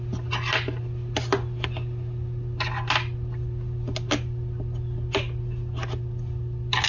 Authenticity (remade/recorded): recorded